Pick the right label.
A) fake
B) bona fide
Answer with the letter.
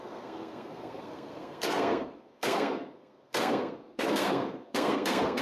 A